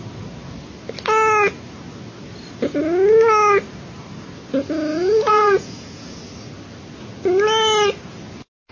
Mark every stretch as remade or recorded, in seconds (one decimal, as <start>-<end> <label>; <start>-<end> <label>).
0.0-4.9 recorded; 4.9-6.2 remade; 6.2-8.7 recorded